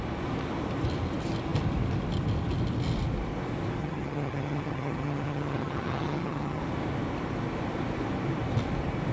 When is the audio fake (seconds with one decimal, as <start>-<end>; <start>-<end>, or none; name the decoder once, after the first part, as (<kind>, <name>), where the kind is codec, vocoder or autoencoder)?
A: 3.8-6.6 (vocoder, HiFi-GAN)